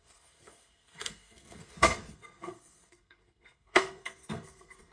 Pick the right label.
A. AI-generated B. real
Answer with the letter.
A